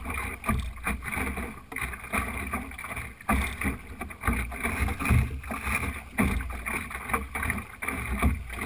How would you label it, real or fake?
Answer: real